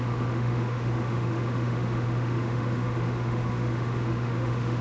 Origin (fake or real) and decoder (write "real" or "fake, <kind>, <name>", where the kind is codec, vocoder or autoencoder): fake, autoencoder, DAC-VAE